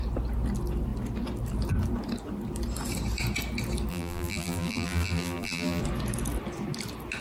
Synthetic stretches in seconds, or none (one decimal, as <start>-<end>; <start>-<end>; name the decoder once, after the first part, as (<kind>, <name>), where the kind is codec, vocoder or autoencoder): 3.9-5.8 (vocoder, BigVGAN v2)